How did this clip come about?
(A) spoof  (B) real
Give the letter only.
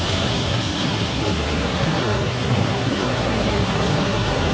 A